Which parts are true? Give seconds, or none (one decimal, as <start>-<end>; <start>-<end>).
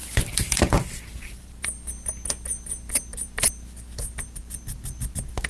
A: 1.6-5.5